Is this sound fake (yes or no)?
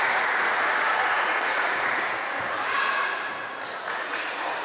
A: yes